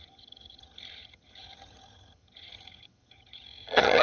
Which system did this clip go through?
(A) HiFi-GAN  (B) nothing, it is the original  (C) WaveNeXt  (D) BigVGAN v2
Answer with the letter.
A